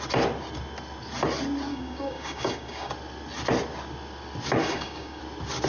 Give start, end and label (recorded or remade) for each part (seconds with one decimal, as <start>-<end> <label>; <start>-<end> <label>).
0.0-1.7 recorded; 1.7-2.9 remade; 2.9-4.6 recorded; 4.6-5.2 remade; 5.2-5.7 recorded